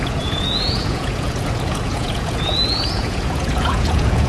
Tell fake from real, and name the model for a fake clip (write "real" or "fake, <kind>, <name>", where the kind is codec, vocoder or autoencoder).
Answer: fake, vocoder, Vocos